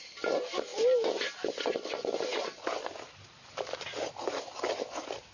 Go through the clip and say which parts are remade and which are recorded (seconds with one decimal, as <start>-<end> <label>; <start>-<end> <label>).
0.0-5.3 recorded